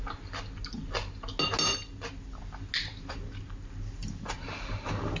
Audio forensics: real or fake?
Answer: real